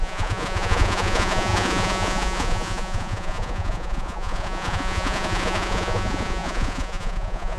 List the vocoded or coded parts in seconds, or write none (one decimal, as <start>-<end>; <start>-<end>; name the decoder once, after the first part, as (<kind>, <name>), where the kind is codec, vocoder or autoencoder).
0.0-7.6 (vocoder, Vocos)